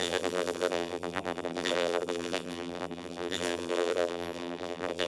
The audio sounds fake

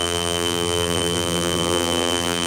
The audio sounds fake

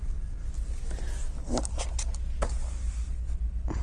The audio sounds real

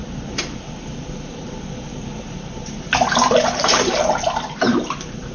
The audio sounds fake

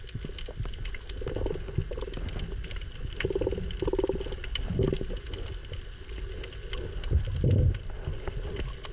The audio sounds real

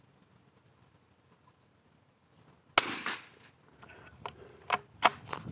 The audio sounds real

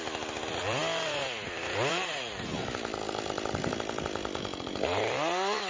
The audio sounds fake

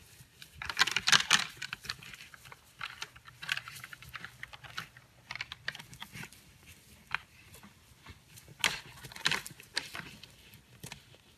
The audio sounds real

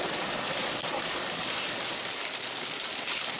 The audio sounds fake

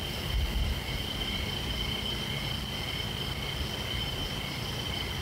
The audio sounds real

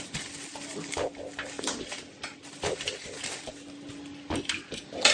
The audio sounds real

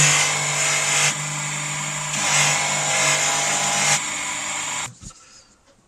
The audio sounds real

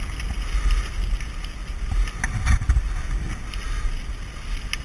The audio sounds real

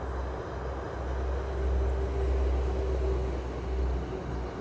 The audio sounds real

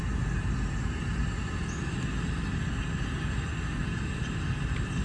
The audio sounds real